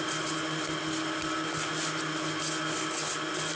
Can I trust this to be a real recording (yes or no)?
yes